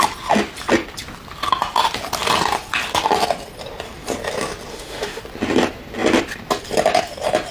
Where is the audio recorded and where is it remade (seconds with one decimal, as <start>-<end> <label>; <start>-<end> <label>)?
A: 0.0-4.7 recorded; 4.7-5.2 remade; 5.2-7.5 recorded

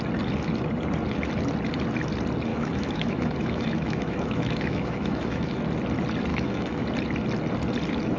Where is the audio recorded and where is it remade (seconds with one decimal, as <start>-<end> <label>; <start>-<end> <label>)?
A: 0.0-2.5 recorded; 2.5-5.6 remade; 5.6-6.3 recorded; 6.3-6.8 remade; 6.8-8.2 recorded

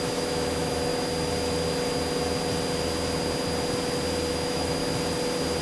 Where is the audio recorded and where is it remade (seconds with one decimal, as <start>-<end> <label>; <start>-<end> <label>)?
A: 0.0-0.9 remade; 0.9-4.3 recorded; 4.3-4.8 remade; 4.8-5.6 recorded

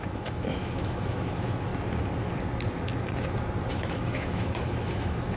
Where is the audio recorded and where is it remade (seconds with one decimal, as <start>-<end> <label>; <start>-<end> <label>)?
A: 0.0-1.7 remade; 1.7-3.7 recorded; 3.7-5.4 remade